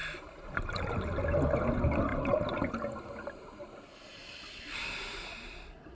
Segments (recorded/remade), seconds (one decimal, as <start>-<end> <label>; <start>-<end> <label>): 0.0-0.6 remade; 0.6-2.1 recorded; 2.1-2.7 remade; 2.7-4.2 recorded; 4.2-4.8 remade; 4.8-5.9 recorded